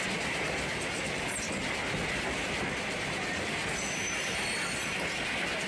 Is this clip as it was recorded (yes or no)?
yes